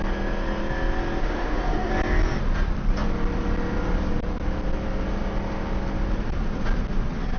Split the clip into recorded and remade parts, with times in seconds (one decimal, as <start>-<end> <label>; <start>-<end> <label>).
0.0-1.2 recorded; 1.2-1.9 remade; 1.9-7.4 recorded